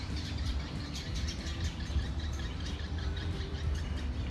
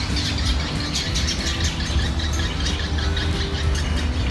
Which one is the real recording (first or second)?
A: second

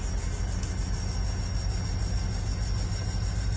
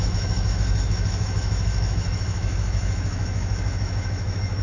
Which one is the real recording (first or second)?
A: first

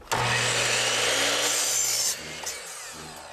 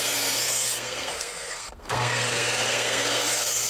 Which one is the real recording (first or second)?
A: first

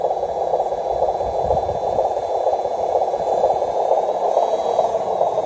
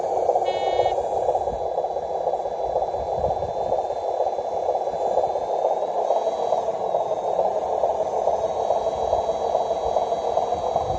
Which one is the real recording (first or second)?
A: second